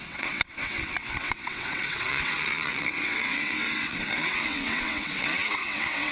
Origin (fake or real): fake